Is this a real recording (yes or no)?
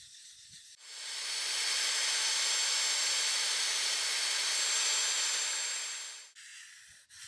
yes